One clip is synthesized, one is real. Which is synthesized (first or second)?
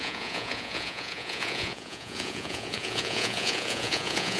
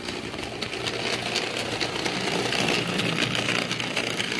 first